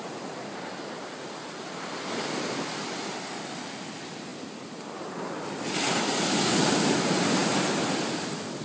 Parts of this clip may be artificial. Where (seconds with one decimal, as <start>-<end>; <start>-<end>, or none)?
none